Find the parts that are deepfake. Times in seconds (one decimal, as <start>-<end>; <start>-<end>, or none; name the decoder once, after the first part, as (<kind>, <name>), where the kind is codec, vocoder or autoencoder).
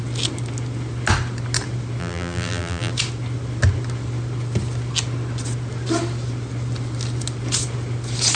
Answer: 2.0-2.9 (vocoder, BigVGAN v2)